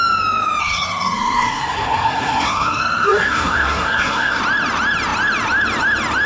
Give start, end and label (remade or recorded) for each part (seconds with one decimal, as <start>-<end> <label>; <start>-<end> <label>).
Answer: 0.0-0.6 recorded; 0.6-4.4 remade; 4.4-6.3 recorded